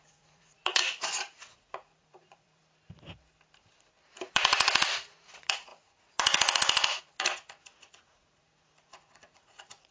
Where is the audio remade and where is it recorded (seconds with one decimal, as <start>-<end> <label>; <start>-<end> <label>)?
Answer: 0.0-2.6 remade; 2.6-4.3 recorded; 4.3-9.9 remade